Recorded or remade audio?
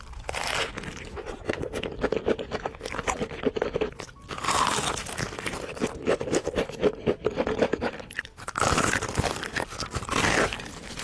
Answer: recorded